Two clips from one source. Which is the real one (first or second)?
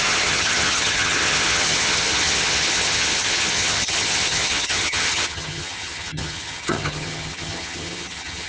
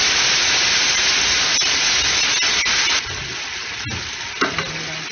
second